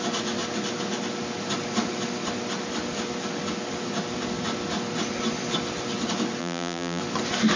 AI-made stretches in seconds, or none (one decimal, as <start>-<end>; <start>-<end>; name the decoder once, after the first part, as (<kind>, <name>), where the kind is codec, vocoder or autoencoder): 6.4-7.0 (vocoder, BigVGAN v2)